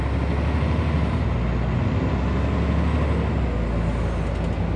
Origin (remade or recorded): recorded